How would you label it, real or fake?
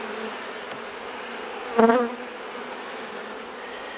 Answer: real